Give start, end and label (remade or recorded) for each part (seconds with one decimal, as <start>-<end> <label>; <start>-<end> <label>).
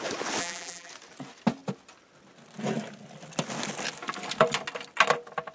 0.0-0.4 recorded; 0.4-0.9 remade; 0.9-5.5 recorded